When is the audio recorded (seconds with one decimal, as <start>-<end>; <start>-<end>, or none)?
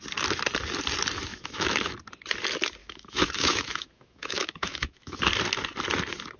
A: 0.0-1.3; 1.9-2.8; 5.2-6.4